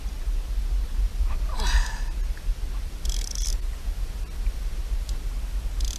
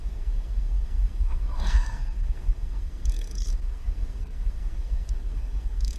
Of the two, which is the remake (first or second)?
second